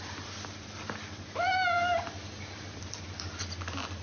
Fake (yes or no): no